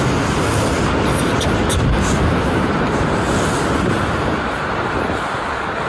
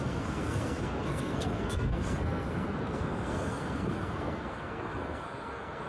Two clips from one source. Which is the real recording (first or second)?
first